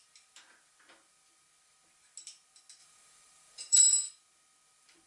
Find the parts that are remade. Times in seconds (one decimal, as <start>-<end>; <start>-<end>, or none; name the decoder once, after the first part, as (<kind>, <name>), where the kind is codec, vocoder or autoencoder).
2.8-3.8 (vocoder, BigVGAN v2)